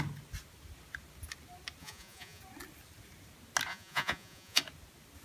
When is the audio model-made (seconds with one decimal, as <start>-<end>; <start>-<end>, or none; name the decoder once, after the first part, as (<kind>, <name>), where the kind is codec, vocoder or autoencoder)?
1.8-2.4 (vocoder, Vocos); 3.7-4.6